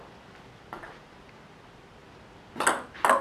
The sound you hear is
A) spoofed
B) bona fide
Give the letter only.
B